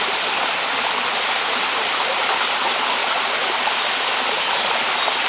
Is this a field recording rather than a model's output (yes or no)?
yes